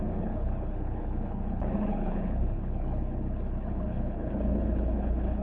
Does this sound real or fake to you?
fake